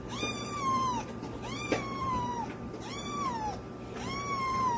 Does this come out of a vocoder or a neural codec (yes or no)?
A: no